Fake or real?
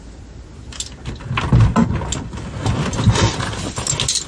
real